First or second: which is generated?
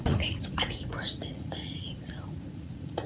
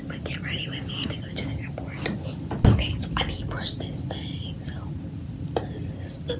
first